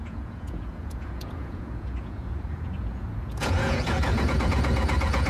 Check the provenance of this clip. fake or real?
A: fake